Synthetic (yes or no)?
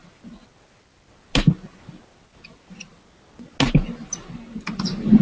no